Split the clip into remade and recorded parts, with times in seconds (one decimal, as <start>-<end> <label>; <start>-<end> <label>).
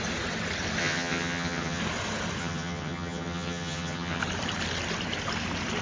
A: 0.0-0.8 recorded; 0.8-1.8 remade; 1.8-2.4 recorded; 2.4-4.2 remade; 4.2-5.8 recorded